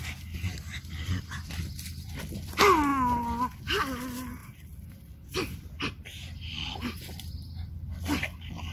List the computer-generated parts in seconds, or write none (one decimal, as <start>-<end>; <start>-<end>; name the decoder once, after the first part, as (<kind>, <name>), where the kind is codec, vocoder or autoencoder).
none